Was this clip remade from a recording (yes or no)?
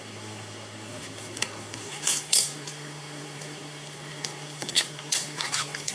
yes